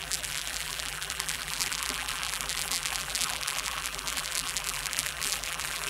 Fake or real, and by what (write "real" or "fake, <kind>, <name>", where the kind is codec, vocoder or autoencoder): fake, vocoder, BigVGAN v2